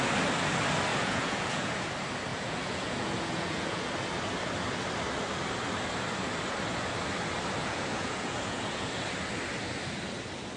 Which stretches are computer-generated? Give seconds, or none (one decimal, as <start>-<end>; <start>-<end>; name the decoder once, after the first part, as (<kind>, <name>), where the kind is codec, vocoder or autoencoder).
0.9-1.9 (vocoder, Vocos); 2.3-3.9; 7.6-8.9